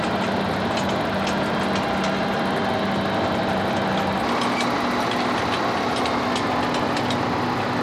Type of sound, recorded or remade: recorded